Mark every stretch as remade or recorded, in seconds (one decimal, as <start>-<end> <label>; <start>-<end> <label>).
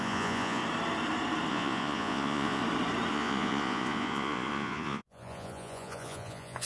0.0-0.6 remade; 0.6-1.5 recorded; 1.5-2.6 remade; 2.6-3.1 recorded; 3.1-6.6 remade